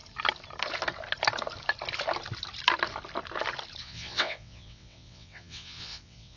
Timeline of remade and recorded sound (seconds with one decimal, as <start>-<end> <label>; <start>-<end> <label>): 0.0-3.8 recorded; 3.8-6.4 remade